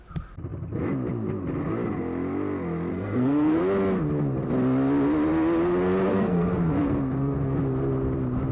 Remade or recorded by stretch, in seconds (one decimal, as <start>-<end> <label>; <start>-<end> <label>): 0.0-2.9 recorded; 2.9-3.6 remade; 3.6-6.1 recorded; 6.1-7.6 remade; 7.6-8.5 recorded